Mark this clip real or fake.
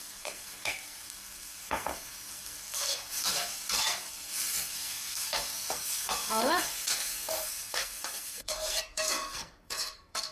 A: fake